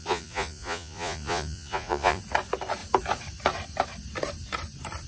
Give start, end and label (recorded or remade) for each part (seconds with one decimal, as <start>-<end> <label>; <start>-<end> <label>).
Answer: 0.0-2.2 remade; 2.2-5.1 recorded